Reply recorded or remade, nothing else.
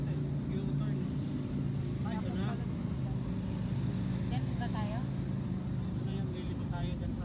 recorded